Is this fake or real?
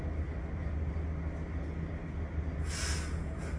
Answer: real